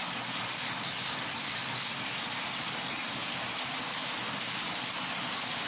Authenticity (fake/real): real